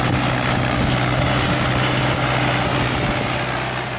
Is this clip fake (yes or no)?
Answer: no